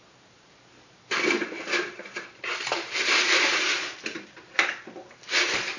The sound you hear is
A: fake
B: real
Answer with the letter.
A